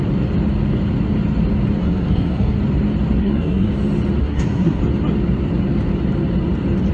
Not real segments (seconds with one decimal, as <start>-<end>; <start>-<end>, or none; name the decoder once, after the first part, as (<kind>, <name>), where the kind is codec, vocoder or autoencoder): 1.8-2.6 (codec, SNAC); 3.2-3.7; 4.2-4.8